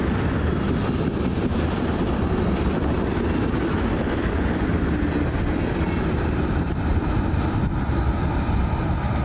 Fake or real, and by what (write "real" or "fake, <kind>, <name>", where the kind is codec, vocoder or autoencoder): real